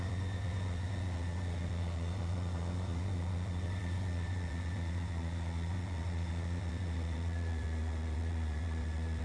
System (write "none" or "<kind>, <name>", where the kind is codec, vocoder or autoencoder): vocoder, Vocos